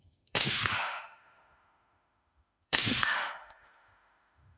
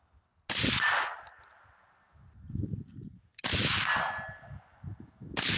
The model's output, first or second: first